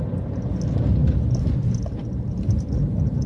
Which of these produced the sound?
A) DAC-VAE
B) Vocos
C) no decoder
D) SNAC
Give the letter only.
C